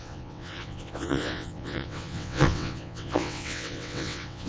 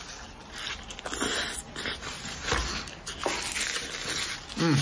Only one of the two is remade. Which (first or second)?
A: first